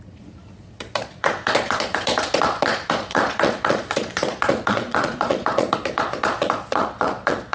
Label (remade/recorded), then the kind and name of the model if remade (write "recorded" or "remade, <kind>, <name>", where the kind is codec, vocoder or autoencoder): remade, vocoder, Vocos